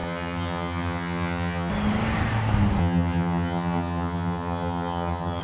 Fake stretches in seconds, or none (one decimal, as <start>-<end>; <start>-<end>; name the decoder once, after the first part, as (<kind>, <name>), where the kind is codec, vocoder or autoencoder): 0.0-1.7 (vocoder, HiFi-GAN); 2.8-5.4